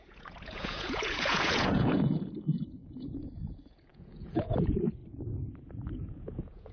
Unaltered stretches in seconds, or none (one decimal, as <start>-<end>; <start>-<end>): 5.0-5.9